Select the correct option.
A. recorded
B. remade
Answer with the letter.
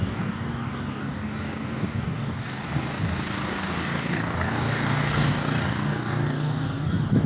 B